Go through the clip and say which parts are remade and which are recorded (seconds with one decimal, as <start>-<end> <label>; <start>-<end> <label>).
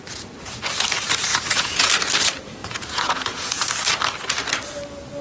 0.0-1.3 recorded; 1.3-1.9 remade; 1.9-2.6 recorded; 2.6-3.7 remade; 3.7-5.2 recorded